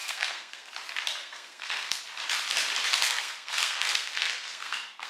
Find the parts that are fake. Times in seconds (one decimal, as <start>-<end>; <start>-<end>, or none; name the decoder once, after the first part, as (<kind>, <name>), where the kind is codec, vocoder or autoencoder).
0.0-0.7 (codec, SNAC); 1.2-2.0; 2.9-5.1